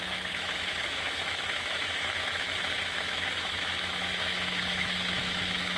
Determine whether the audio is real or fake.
fake